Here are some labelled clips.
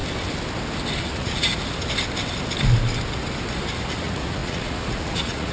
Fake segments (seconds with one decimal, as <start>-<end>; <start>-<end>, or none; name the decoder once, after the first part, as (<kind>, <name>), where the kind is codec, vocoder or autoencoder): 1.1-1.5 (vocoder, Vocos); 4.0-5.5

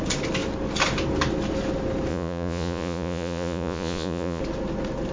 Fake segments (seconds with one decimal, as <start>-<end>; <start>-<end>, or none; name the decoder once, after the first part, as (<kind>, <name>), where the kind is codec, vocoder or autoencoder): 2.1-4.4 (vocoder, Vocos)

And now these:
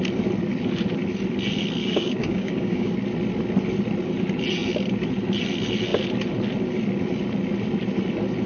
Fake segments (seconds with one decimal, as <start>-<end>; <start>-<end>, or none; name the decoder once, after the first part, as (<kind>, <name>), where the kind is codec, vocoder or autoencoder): 1.8-2.9 (codec, DAC)